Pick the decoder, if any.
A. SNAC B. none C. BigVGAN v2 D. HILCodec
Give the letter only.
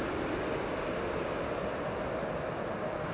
B